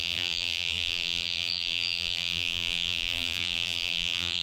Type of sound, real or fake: fake